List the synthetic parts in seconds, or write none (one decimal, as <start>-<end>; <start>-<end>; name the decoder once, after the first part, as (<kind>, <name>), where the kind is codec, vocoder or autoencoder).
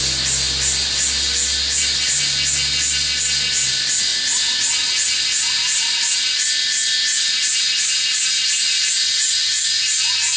none